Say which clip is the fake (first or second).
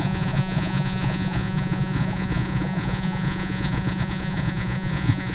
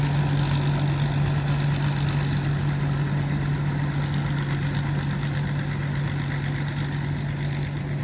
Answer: first